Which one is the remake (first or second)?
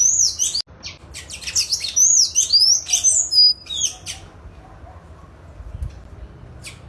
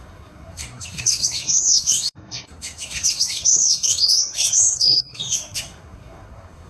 second